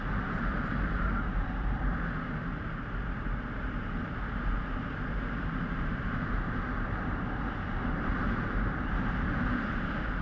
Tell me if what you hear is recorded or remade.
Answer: remade